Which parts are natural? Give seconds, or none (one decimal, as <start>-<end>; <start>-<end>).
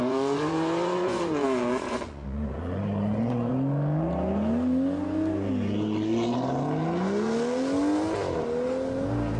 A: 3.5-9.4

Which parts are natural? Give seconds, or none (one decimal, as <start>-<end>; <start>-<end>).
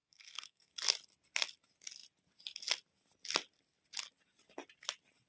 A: 0.7-5.3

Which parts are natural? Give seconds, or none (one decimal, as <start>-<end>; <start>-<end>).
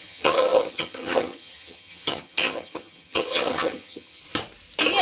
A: 4.2-5.0